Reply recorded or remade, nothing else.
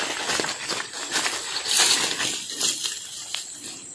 recorded